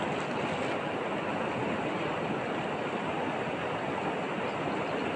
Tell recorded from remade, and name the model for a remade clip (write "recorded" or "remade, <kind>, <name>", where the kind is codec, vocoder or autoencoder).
recorded